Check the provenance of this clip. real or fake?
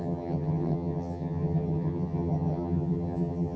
fake